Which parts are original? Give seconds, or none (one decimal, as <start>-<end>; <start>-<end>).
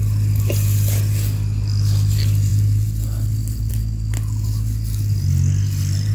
0.0-6.1